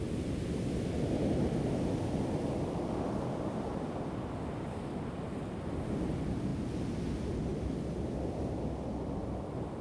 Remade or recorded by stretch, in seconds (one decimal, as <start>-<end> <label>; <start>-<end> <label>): 0.0-7.5 recorded; 7.5-8.1 remade; 8.1-9.2 recorded; 9.2-9.8 remade